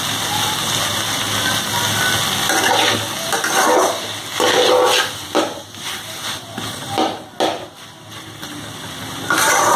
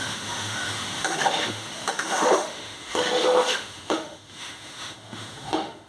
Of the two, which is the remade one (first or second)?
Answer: second